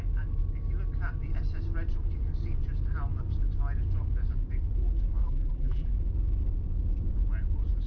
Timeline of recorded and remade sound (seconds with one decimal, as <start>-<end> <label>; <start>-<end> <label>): 0.0-5.2 recorded; 5.2-5.9 remade; 5.9-7.9 recorded

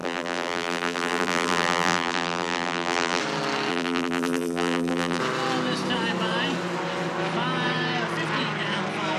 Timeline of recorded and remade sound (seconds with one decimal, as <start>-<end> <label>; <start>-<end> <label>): 0.0-3.2 remade; 3.2-3.7 recorded; 3.7-5.2 remade; 5.2-9.2 recorded

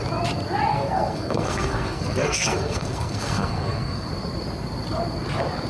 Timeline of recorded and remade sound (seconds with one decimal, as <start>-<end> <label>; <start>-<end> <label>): 0.0-0.7 recorded; 0.7-4.1 remade; 4.1-5.7 recorded

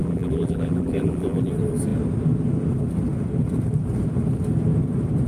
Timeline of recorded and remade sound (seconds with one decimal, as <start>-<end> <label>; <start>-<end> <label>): 0.0-1.5 remade; 1.5-5.3 recorded

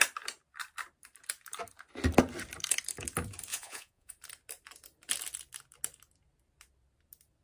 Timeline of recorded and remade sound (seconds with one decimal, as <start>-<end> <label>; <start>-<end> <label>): 0.0-3.5 recorded; 3.5-4.1 remade; 4.1-7.4 recorded

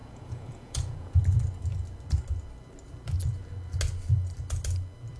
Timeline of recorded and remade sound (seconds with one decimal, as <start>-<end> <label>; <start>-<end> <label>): 0.0-1.2 remade; 1.2-5.2 recorded